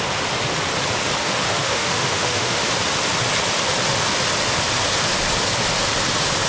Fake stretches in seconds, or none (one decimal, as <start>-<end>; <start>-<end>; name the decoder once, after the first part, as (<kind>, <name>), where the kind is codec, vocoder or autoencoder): 1.2-2.7 (autoencoder, DAC-VAE)